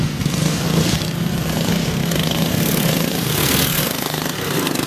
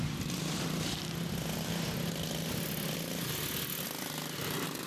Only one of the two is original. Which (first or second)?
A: second